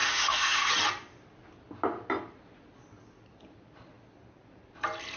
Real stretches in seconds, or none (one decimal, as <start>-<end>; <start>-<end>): 0.7-5.2

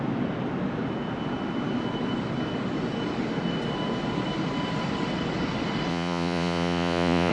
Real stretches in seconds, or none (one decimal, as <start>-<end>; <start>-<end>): 0.0-5.9

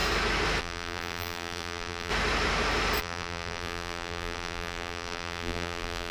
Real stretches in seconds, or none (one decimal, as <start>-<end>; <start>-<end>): 0.0-0.6; 2.1-3.0

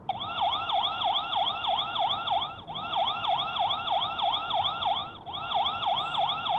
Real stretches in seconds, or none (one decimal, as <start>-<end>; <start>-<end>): none

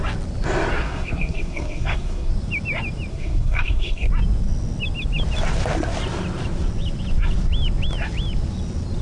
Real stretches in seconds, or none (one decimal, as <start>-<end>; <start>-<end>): 0.0-0.7; 2.3-3.1; 4.1-9.0

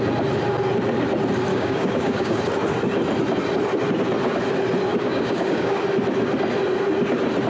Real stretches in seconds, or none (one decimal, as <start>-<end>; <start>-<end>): 0.0-1.5; 2.4-4.9; 5.8-7.5

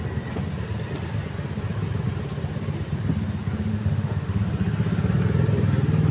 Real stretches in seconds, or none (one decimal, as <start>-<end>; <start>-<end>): 0.0-3.7; 4.4-6.1

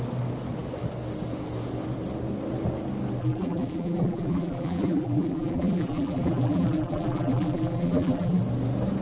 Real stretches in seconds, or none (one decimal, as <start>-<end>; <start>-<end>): 0.0-3.2; 8.4-9.0